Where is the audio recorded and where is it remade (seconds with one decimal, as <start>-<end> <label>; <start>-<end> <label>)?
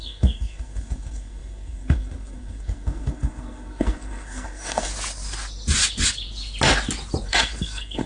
0.0-4.9 remade; 4.9-7.3 recorded; 7.3-8.1 remade